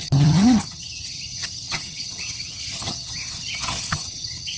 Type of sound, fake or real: fake